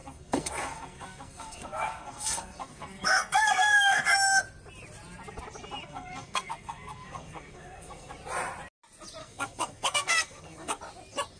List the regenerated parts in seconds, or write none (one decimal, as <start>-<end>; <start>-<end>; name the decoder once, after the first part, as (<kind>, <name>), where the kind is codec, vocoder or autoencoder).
0.0-4.4 (codec, SNAC); 5.8-8.1; 9.2-10.8